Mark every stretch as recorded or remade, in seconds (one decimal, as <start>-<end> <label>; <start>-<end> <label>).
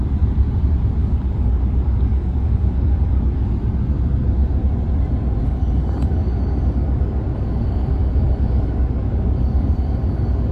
0.0-1.0 recorded; 1.0-3.5 remade; 3.5-5.4 recorded; 5.4-10.5 remade